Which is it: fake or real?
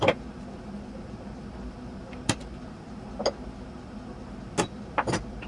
real